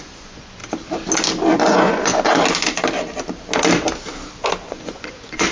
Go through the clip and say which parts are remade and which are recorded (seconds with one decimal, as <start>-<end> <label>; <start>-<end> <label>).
0.0-0.6 remade; 0.6-1.7 recorded; 1.7-2.1 remade; 2.1-4.6 recorded; 4.6-5.5 remade